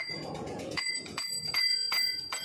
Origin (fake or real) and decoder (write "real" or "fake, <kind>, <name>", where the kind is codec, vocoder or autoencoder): fake, vocoder, Vocos